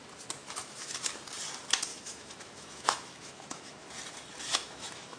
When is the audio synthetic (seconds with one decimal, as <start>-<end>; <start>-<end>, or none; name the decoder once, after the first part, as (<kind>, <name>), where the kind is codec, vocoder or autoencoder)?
0.4-1.1 (autoencoder, DAC-VAE); 1.9-3.9; 4.5-5.2